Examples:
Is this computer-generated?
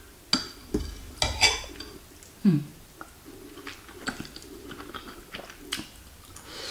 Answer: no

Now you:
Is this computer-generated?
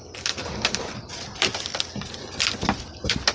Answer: no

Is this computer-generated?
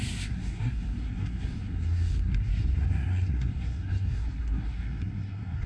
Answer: yes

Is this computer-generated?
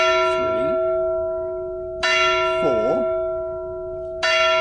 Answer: no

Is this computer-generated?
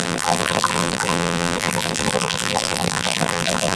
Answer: yes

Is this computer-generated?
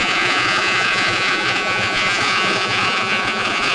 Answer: yes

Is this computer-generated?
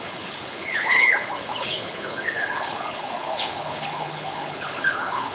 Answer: yes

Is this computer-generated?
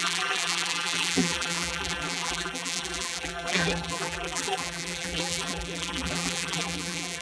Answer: yes